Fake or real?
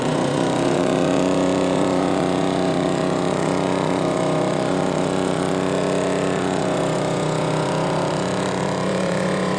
fake